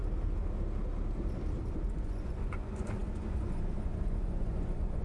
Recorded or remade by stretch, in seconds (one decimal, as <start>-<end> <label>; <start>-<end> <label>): 0.0-1.7 recorded; 1.7-5.0 remade

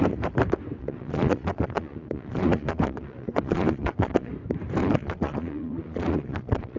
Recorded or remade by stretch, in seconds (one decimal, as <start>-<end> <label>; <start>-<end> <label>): 0.0-0.8 recorded; 0.8-4.3 remade; 4.3-4.8 recorded; 4.8-6.8 remade

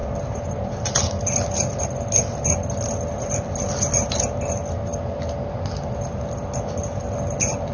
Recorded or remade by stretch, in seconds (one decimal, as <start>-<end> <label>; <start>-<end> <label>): 0.0-7.7 recorded

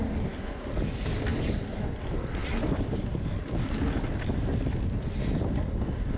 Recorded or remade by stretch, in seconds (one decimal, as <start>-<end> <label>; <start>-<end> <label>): 0.0-6.2 recorded

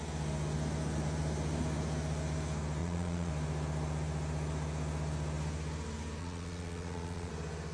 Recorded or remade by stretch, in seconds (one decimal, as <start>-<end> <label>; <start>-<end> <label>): 0.0-2.8 recorded; 2.8-3.3 remade; 3.3-6.2 recorded; 6.2-7.3 remade; 7.3-7.7 recorded

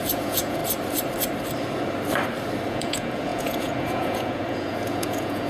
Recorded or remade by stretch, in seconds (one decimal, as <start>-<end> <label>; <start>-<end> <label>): 0.0-0.6 remade; 0.6-2.7 recorded; 2.7-5.5 remade